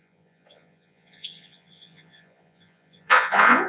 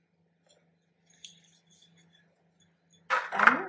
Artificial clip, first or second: first